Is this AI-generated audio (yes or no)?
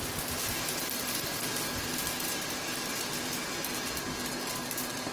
no